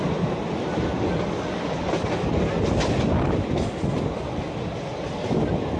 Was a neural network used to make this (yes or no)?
no